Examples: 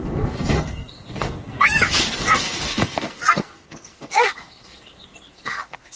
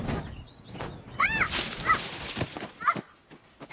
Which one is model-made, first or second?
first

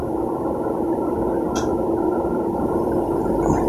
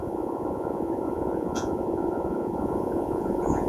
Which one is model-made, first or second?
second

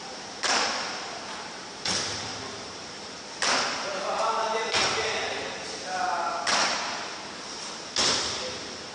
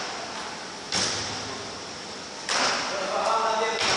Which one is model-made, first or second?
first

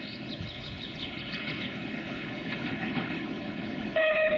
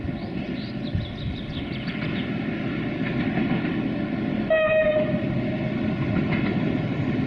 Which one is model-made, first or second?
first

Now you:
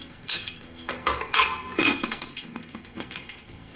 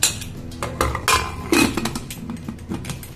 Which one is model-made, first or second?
first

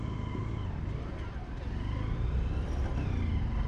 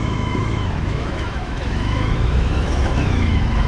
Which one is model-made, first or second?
second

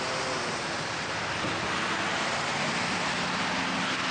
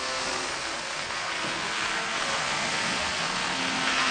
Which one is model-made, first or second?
second